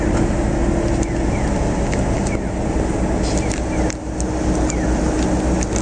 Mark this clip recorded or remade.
recorded